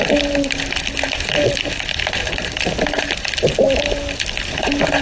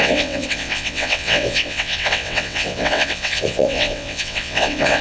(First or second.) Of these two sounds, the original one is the first